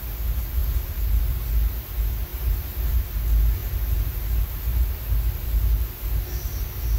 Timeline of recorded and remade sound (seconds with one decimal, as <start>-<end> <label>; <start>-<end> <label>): 0.0-0.6 recorded; 0.6-1.2 remade; 1.2-2.3 recorded; 2.3-3.0 remade; 3.0-3.6 recorded; 3.6-4.8 remade; 4.8-7.0 recorded